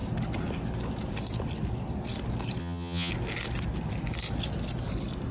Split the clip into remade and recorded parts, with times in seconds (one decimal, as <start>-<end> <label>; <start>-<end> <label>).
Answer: 0.0-2.6 recorded; 2.6-3.1 remade; 3.1-5.3 recorded